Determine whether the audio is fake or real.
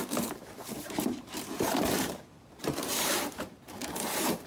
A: fake